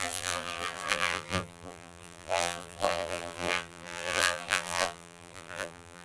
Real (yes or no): no